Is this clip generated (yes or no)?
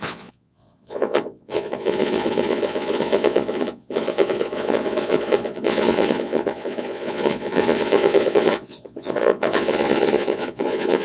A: yes